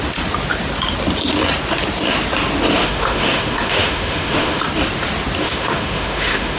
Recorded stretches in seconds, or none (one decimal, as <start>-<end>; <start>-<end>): 0.0-2.8; 4.6-5.4